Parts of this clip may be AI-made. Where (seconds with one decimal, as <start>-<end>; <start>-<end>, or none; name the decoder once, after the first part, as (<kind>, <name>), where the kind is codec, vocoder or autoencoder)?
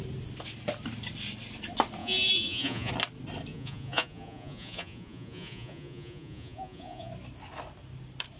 2.0-2.9 (vocoder, Vocos); 3.5-7.1